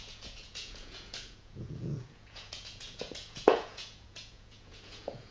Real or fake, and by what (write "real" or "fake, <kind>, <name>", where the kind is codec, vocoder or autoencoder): fake, vocoder, Vocos